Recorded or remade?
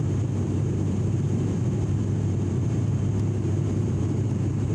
remade